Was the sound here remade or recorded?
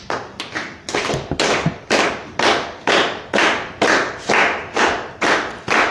recorded